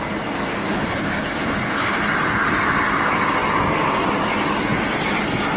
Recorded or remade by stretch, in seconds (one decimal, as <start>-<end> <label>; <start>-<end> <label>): 0.0-0.7 recorded; 0.7-2.0 remade; 2.0-5.6 recorded